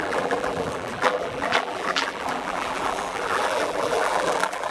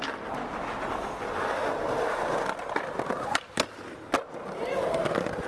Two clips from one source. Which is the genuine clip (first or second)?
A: second